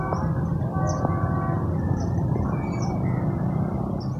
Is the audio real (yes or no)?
yes